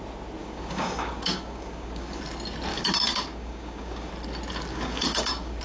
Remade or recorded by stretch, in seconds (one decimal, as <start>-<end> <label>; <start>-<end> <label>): 0.0-0.4 recorded; 0.4-2.2 remade; 2.2-2.7 recorded; 2.7-4.1 remade; 4.1-4.7 recorded; 4.7-5.6 remade